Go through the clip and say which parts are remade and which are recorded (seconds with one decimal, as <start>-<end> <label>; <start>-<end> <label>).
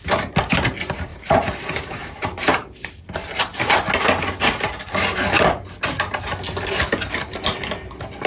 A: 0.0-1.1 recorded; 1.1-3.0 remade; 3.0-8.3 recorded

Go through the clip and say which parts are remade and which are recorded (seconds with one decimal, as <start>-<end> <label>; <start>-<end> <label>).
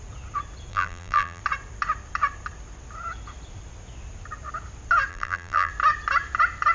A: 0.0-0.7 recorded; 0.7-1.4 remade; 1.4-5.1 recorded; 5.1-5.7 remade; 5.7-6.7 recorded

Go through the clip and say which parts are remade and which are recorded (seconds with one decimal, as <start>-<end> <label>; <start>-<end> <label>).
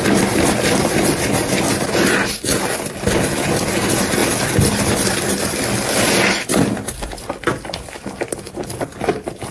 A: 0.0-9.5 remade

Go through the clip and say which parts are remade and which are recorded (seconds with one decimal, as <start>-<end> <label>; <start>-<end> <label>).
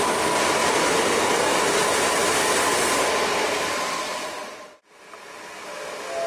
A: 0.0-6.3 recorded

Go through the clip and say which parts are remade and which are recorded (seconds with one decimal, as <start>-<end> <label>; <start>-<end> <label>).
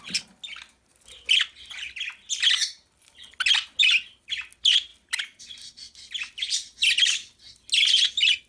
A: 0.0-8.5 recorded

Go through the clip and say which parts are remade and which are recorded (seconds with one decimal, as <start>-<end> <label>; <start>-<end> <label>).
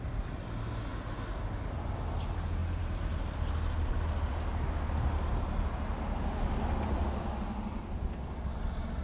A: 0.0-2.6 recorded; 2.6-3.5 remade; 3.5-9.0 recorded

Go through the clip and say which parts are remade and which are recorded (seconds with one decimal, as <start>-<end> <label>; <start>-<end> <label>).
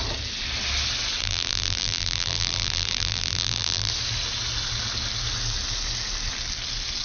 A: 0.0-1.2 recorded; 1.2-3.9 remade; 3.9-7.0 recorded